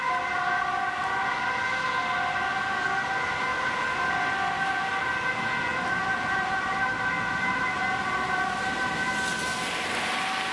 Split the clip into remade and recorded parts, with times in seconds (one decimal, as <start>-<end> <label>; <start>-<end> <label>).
0.0-3.5 recorded; 3.5-4.1 remade; 4.1-5.7 recorded; 5.7-9.1 remade; 9.1-10.5 recorded